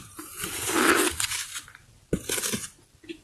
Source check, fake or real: real